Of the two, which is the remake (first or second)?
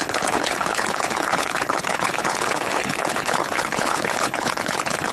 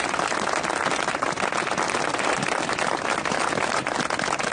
first